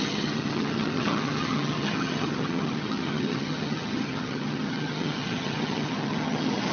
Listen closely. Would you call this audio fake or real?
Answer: fake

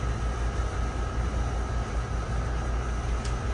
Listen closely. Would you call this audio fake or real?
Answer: real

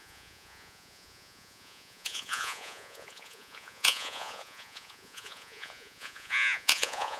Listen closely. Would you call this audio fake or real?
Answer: fake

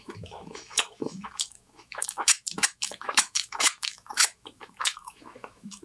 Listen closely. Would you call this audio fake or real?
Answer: fake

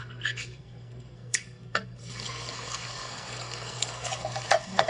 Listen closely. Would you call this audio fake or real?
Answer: fake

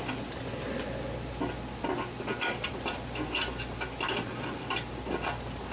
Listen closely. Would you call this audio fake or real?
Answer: real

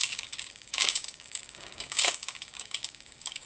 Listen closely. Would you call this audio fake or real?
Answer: fake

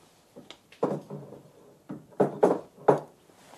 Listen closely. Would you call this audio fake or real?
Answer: real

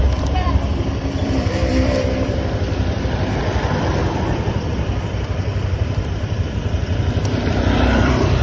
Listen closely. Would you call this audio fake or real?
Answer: fake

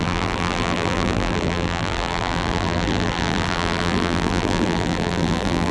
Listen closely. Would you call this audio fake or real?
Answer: fake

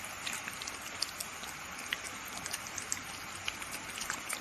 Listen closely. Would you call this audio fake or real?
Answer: real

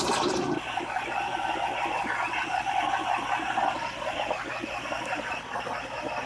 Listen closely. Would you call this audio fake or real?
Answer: real